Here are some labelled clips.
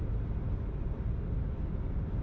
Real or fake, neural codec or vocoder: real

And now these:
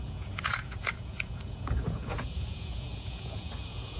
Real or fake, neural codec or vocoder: fake, vocoder, Vocos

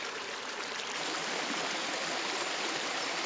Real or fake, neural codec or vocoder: real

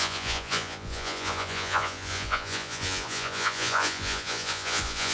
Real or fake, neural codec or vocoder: fake, vocoder, Vocos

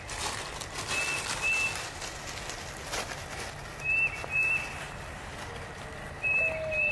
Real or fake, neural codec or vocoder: real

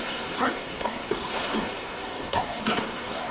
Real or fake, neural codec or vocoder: fake, codec, SNAC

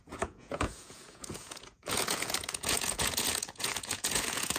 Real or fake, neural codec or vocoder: fake, vocoder, Vocos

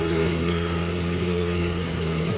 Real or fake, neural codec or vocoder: fake, codec, SNAC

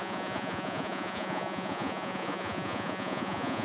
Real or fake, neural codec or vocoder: fake, vocoder, Vocos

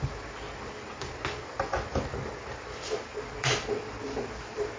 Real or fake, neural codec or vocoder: real